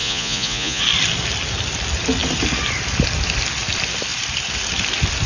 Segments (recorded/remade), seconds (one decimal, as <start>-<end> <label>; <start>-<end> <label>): 0.0-0.8 remade; 0.8-5.3 recorded